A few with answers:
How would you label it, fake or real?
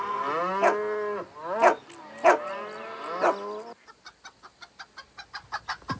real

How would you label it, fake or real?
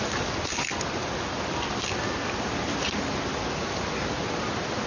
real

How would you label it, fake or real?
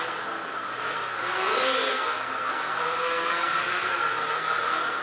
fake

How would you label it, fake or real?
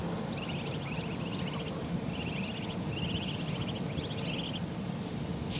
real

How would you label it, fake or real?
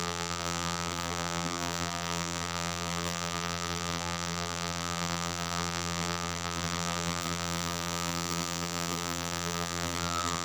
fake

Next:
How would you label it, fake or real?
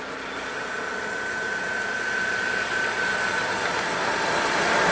real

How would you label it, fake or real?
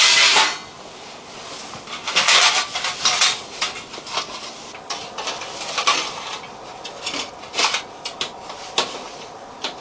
real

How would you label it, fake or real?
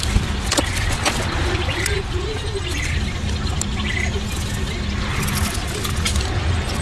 real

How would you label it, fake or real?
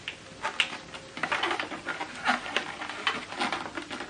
real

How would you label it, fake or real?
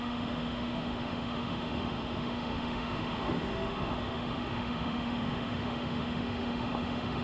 fake